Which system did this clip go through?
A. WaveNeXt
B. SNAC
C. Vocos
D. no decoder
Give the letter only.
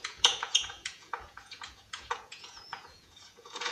C